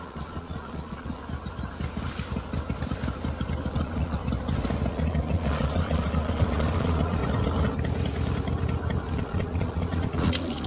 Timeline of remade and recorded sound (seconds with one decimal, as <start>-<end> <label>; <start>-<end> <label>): 0.0-1.2 remade; 1.2-3.7 recorded; 3.7-4.2 remade; 4.2-4.9 recorded; 4.9-7.2 remade; 7.2-9.1 recorded; 9.1-10.7 remade